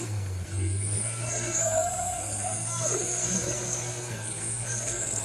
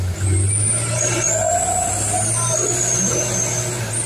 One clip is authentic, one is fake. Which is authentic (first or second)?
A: second